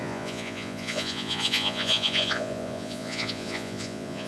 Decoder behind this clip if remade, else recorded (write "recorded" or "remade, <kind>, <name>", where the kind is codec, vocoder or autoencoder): remade, vocoder, Vocos